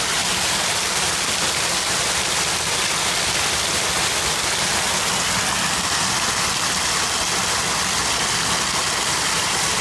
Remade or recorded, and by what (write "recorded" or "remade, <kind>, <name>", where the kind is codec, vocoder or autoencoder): recorded